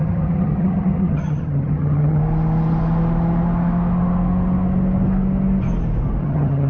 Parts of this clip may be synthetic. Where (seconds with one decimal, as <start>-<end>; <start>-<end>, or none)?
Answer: 0.0-2.2; 6.2-6.7